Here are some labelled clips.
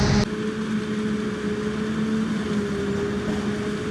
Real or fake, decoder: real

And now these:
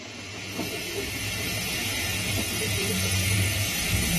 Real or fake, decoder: fake, vocoder, Vocos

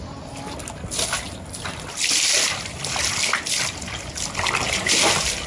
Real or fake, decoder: real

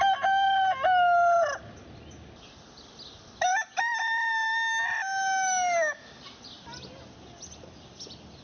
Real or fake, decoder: real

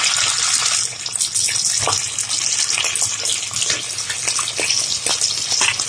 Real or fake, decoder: real